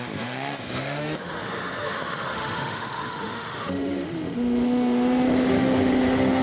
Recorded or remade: remade